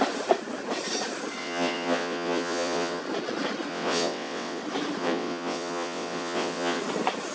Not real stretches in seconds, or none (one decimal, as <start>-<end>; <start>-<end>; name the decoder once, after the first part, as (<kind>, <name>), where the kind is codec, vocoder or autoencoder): 1.4-3.0 (vocoder, WaveNeXt); 3.7-4.6; 5.0-6.8